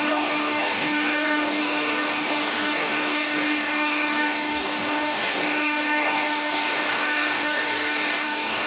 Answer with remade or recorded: remade